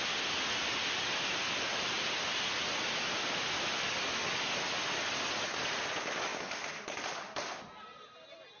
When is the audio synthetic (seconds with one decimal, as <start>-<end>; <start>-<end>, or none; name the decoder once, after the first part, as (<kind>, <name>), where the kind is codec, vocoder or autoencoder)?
none